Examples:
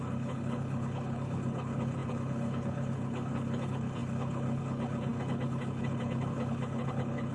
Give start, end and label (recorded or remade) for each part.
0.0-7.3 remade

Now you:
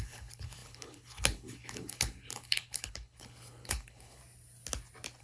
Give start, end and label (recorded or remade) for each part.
0.0-4.2 remade; 4.2-5.2 recorded

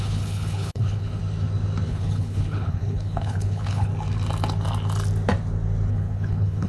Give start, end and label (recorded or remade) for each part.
0.0-1.2 remade; 1.2-1.9 recorded; 1.9-3.9 remade; 3.9-5.9 recorded; 5.9-6.7 remade

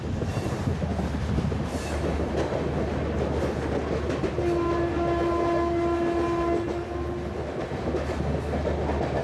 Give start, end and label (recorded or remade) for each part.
0.0-9.2 recorded

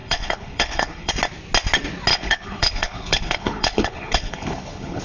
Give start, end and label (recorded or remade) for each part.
0.0-1.1 remade; 1.1-2.1 recorded; 2.1-5.0 remade